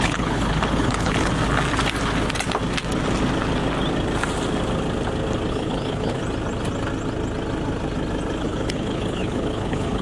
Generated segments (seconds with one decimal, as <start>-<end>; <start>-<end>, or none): 0.0-1.3; 5.5-6.2; 8.4-10.0